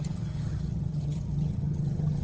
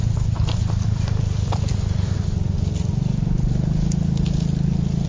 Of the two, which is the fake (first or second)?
first